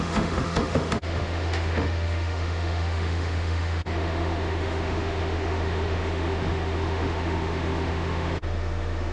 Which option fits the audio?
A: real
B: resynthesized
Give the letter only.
B